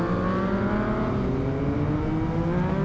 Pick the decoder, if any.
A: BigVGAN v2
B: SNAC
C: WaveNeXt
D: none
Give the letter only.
D